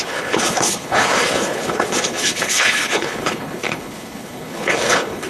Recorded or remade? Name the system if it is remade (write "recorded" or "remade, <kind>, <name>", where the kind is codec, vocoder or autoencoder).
remade, codec, HILCodec